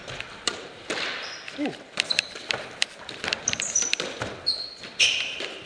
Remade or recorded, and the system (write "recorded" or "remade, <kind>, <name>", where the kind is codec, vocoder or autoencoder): remade, vocoder, BigVGAN v2